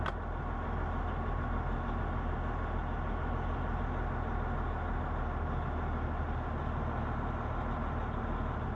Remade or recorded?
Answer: recorded